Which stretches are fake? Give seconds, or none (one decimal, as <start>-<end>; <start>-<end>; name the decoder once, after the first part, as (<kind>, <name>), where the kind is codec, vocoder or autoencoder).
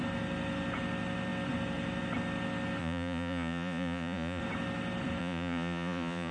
2.8-4.4 (vocoder, Vocos); 5.2-6.3